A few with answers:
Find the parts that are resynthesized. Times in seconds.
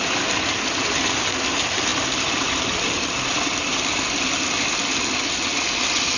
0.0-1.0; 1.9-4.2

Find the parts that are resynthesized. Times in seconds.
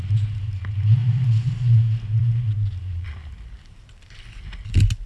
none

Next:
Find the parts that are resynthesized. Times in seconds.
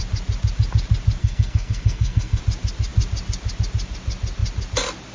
1.2-2.4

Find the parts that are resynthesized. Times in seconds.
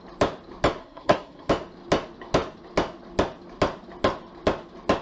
0.8-1.5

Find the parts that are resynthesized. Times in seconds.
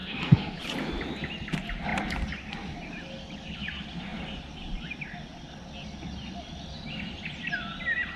0.0-0.6